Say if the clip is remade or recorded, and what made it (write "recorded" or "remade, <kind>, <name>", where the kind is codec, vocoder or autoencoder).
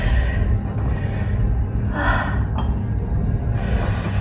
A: recorded